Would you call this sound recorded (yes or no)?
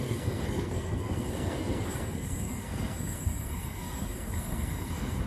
no